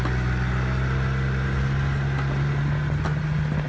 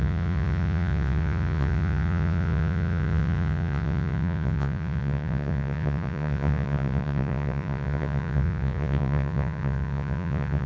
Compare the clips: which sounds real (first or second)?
first